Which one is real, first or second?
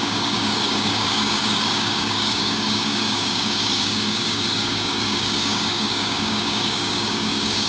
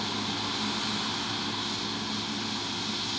second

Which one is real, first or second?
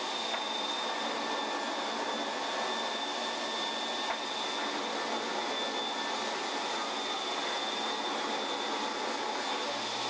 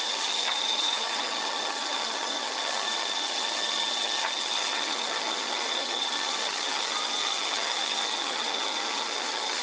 first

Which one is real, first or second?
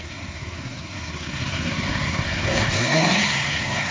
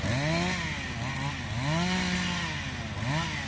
second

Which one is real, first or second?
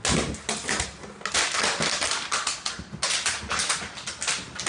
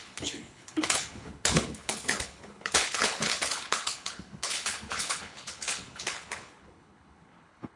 first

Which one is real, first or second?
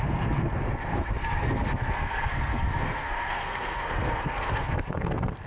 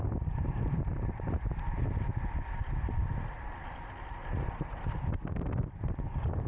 second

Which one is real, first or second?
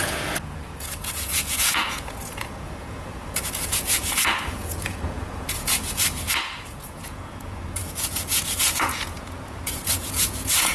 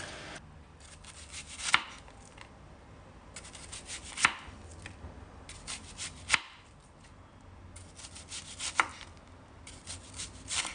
second